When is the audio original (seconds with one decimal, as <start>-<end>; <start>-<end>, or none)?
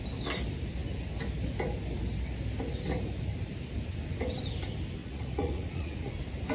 0.0-5.0; 6.1-6.5